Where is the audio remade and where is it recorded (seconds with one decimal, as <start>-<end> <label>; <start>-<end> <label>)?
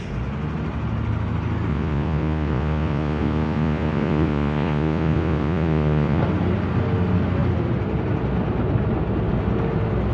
0.0-1.7 recorded; 1.7-6.2 remade; 6.2-10.1 recorded